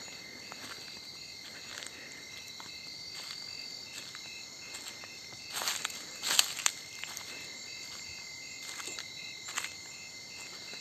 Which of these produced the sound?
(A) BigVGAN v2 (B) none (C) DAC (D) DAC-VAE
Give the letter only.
B